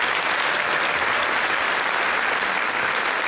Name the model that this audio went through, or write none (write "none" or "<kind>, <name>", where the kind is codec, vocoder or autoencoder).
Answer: none